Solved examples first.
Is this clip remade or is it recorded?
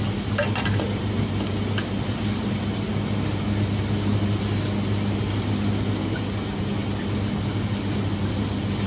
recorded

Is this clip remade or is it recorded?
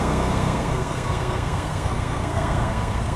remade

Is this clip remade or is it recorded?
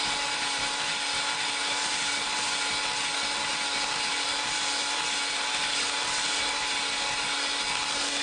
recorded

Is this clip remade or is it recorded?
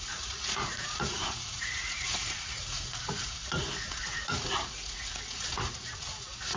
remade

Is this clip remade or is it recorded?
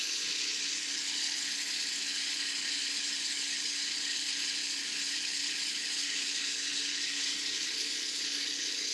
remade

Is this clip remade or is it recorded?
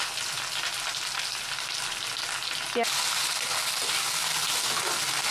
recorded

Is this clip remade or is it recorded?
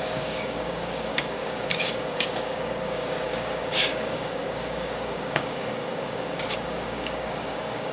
remade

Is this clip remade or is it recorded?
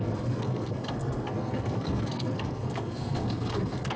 remade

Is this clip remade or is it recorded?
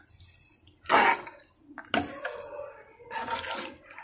recorded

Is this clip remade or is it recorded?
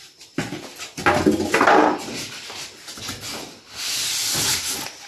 recorded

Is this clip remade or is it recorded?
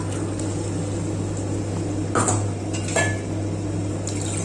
recorded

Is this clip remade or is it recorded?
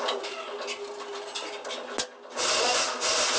recorded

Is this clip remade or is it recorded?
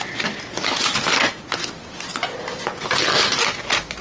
recorded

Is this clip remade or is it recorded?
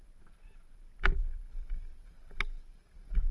remade